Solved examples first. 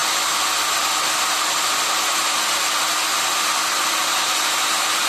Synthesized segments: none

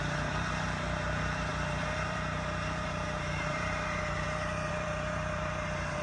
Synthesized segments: 0.0-6.0 (vocoder, BigVGAN v2)

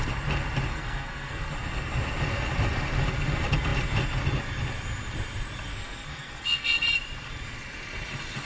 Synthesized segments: 0.7-1.5 (codec, SNAC); 5.7-6.9

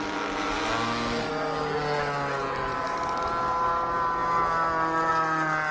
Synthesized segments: none